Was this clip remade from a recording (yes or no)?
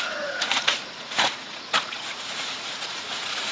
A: yes